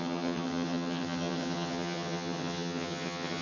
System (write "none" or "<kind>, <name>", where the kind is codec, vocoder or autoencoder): vocoder, HiFi-GAN